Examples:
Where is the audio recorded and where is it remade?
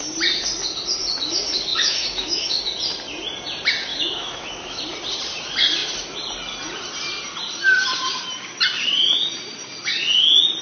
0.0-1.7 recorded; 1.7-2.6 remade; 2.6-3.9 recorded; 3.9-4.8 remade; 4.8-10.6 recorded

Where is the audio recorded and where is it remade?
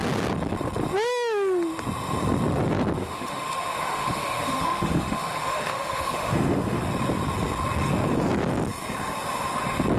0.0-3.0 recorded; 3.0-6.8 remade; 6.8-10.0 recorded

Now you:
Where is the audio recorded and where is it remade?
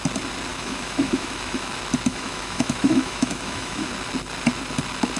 0.0-0.5 recorded; 0.5-1.7 remade; 1.7-2.1 recorded; 2.1-3.9 remade; 3.9-5.2 recorded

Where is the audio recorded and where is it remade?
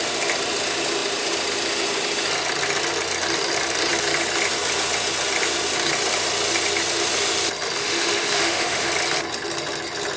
0.0-7.8 recorded; 7.8-8.9 remade; 8.9-10.2 recorded